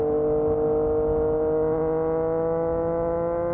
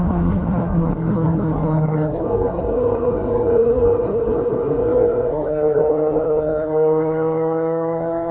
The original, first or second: first